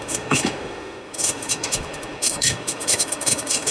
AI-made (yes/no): yes